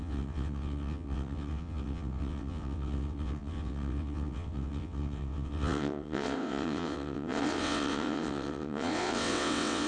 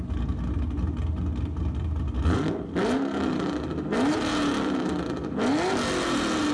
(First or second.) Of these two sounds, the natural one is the second